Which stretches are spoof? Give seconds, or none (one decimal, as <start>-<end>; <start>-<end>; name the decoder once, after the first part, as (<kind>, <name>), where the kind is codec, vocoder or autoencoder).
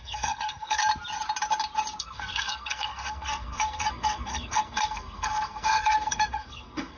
0.0-0.8 (codec, SNAC); 2.0-7.0